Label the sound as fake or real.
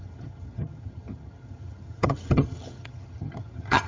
fake